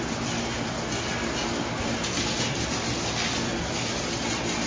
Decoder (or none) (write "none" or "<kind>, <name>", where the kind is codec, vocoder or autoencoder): none